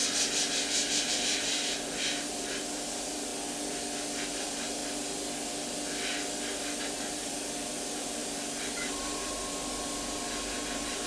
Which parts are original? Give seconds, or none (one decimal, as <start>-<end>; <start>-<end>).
0.0-1.1; 3.3-4.3; 4.8-6.8